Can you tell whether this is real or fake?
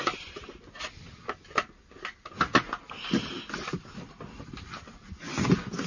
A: real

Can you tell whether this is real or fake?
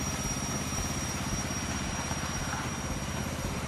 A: fake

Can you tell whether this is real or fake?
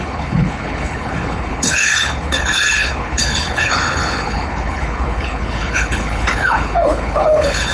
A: fake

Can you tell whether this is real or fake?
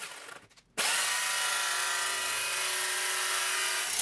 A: real